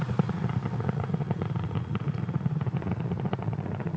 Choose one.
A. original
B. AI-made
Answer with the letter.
B